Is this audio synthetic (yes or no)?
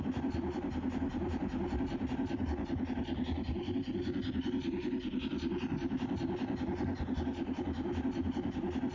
no